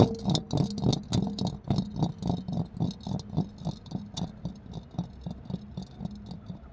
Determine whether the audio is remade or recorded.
recorded